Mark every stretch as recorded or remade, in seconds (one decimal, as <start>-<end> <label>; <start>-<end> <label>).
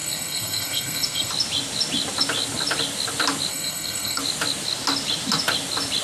0.0-1.3 remade; 1.3-3.5 recorded; 3.5-4.2 remade; 4.2-6.0 recorded